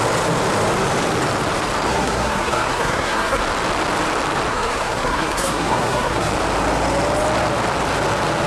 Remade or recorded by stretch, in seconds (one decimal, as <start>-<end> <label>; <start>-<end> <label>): 0.0-1.9 recorded; 1.9-3.4 remade; 3.4-4.5 recorded; 4.5-6.3 remade; 6.3-8.5 recorded